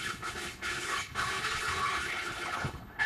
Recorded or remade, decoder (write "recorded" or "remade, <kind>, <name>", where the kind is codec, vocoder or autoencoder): remade, codec, HILCodec